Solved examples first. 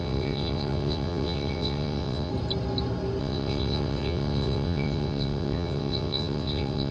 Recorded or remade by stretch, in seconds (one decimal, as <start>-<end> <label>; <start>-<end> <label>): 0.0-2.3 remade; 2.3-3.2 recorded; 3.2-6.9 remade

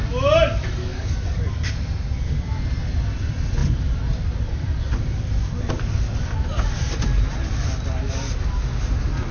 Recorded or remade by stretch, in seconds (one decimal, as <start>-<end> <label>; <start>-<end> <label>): 0.0-0.8 recorded; 0.8-1.5 remade; 1.5-9.3 recorded

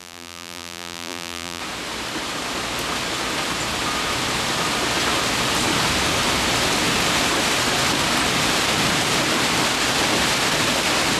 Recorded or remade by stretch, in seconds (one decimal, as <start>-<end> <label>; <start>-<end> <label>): 0.0-1.6 remade; 1.6-11.2 recorded

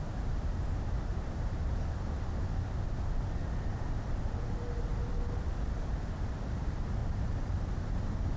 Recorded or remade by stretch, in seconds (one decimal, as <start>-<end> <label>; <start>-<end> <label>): 0.0-1.1 recorded; 1.1-2.2 remade; 2.2-7.0 recorded; 7.0-8.0 remade; 8.0-8.4 recorded

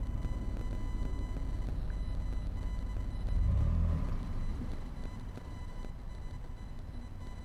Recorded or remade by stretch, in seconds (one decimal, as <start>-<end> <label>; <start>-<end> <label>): 0.0-4.5 recorded; 4.5-5.8 remade; 5.8-7.4 recorded

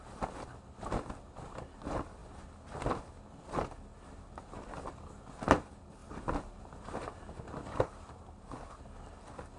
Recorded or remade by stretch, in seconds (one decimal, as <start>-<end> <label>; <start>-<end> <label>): 0.0-9.6 recorded

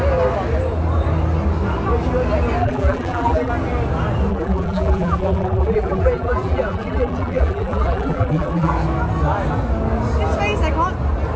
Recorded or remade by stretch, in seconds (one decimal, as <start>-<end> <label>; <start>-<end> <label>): 0.0-2.6 recorded; 2.6-3.5 remade; 3.5-4.3 recorded; 4.3-8.7 remade; 8.7-11.4 recorded

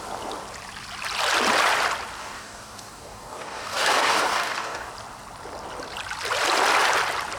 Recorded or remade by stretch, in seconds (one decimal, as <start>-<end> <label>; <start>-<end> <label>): 0.0-2.2 recorded; 2.2-4.9 remade; 4.9-7.4 recorded